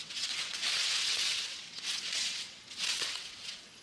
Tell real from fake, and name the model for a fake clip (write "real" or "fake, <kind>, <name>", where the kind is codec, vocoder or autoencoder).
fake, vocoder, WaveNeXt